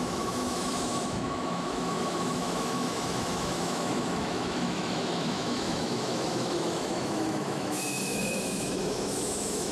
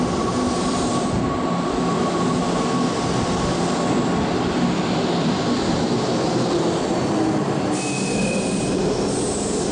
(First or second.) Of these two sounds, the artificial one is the first